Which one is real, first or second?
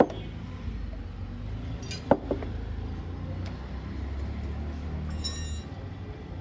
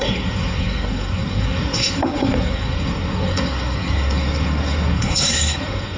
first